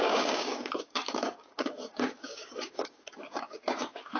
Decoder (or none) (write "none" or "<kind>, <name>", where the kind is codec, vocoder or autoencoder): codec, DAC